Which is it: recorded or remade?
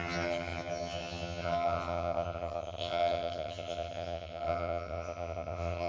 remade